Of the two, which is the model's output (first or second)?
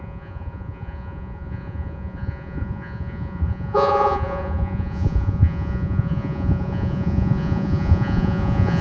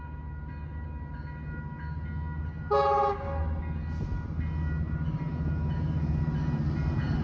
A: first